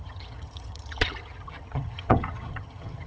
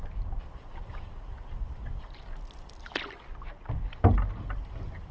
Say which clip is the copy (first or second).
first